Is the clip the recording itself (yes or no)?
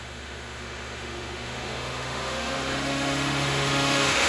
no